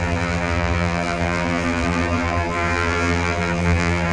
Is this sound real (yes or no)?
no